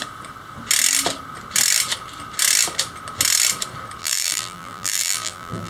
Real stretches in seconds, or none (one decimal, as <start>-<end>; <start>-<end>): 0.0-4.0